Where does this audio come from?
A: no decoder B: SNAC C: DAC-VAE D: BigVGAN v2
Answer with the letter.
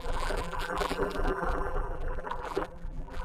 D